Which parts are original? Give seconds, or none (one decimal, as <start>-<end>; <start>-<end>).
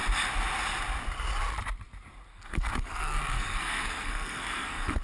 0.0-2.3